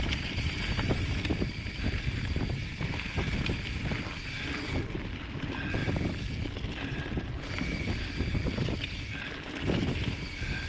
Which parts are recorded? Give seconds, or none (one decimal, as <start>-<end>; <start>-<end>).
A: 0.0-10.7